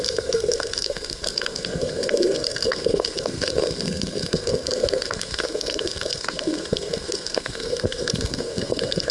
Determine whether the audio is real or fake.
fake